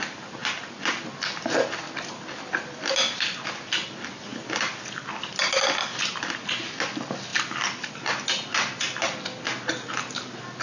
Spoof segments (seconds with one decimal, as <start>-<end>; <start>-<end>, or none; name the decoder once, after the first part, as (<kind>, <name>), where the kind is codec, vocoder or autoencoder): none